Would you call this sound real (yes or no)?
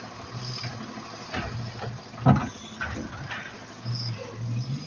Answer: yes